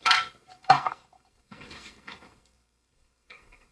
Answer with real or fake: fake